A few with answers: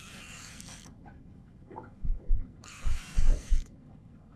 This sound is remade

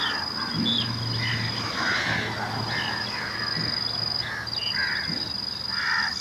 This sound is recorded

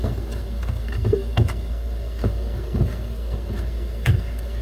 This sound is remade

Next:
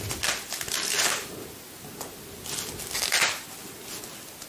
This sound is recorded